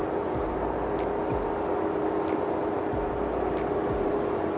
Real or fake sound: real